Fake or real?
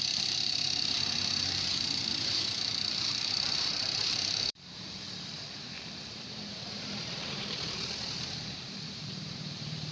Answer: fake